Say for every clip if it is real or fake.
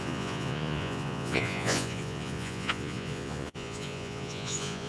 fake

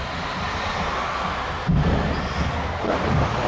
real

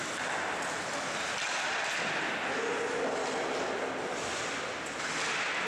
real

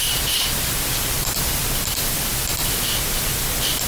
real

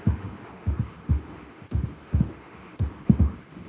fake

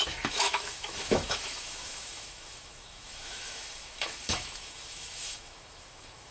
fake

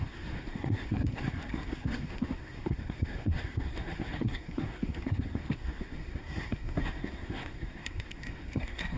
fake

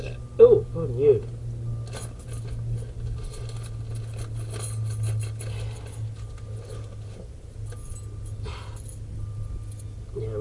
real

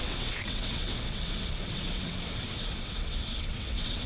fake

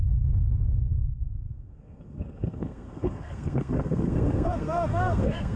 fake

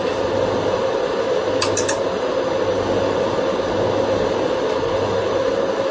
real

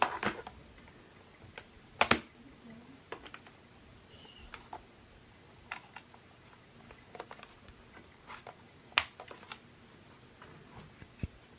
real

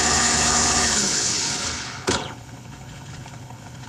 fake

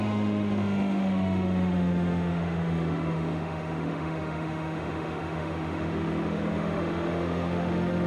fake